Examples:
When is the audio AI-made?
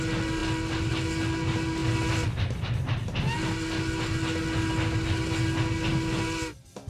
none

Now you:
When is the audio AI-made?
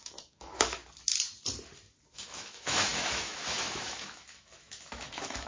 0.0-0.8 (autoencoder, DAC-VAE); 2.1-5.5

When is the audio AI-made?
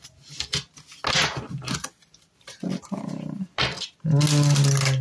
none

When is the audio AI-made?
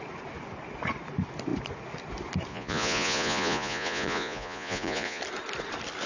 2.5-5.2 (vocoder, Vocos)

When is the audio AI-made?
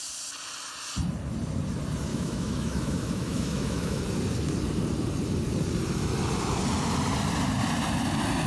2.1-4.0 (autoencoder, DAC-VAE)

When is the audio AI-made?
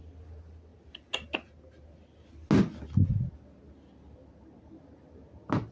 none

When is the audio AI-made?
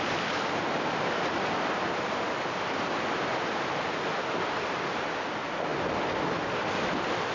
none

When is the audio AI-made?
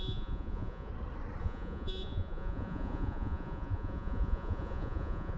0.0-0.9 (vocoder, Vocos); 1.4-5.4